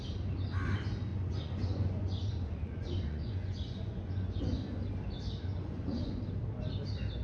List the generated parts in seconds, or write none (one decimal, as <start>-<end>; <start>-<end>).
1.1-4.4; 5.5-6.2